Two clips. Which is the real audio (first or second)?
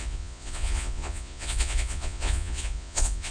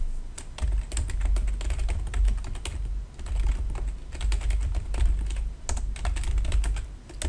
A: second